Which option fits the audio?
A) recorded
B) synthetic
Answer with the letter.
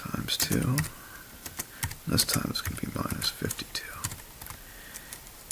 A